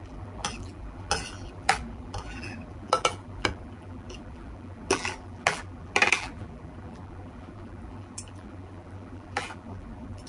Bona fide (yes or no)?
no